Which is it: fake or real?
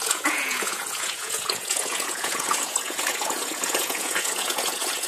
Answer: fake